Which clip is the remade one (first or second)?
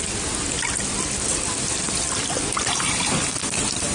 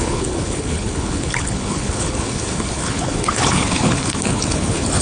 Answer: second